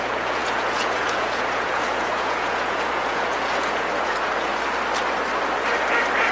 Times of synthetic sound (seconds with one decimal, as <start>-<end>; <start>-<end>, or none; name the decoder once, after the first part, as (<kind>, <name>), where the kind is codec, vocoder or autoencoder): 0.0-4.5 (vocoder, Vocos)